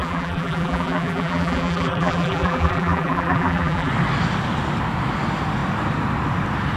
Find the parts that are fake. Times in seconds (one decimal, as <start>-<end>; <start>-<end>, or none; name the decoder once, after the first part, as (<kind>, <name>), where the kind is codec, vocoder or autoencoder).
0.0-3.9 (vocoder, BigVGAN v2)